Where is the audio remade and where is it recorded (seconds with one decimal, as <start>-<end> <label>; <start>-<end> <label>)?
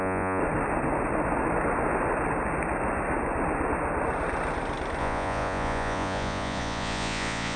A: 0.0-0.4 remade; 0.4-5.0 recorded; 5.0-7.6 remade